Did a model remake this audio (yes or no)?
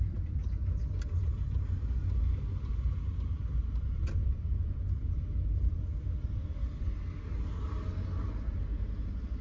no